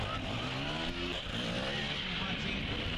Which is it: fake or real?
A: real